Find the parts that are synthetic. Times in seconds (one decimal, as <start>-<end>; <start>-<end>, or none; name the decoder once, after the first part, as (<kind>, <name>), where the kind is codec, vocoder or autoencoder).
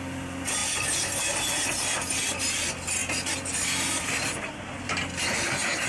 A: none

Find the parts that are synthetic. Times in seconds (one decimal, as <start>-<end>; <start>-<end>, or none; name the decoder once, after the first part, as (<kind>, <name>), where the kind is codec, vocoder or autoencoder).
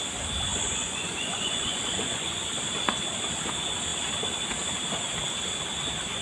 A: 0.5-2.5 (vocoder, Vocos)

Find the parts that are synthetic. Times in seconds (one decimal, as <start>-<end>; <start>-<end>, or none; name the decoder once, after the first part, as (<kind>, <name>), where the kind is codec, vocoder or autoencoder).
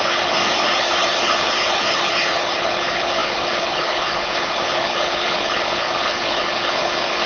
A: 0.0-7.3 (codec, HILCodec)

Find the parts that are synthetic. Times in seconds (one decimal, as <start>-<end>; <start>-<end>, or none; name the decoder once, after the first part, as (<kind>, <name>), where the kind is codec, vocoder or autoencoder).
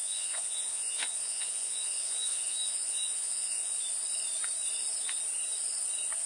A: 0.0-3.8 (vocoder, Vocos)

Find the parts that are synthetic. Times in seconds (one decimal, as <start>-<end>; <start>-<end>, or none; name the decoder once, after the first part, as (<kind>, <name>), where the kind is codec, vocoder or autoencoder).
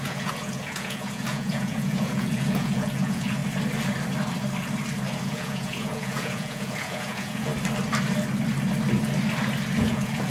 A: 0.0-3.4 (vocoder, Vocos); 5.2-7.5; 9.8-10.3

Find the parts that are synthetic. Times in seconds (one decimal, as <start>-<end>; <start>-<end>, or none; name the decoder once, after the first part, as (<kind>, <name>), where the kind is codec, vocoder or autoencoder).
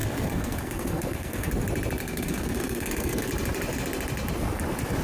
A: 0.0-1.5 (codec, SNAC); 2.0-3.3